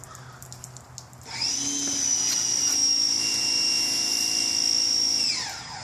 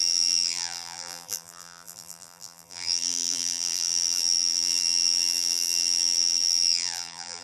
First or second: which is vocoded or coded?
second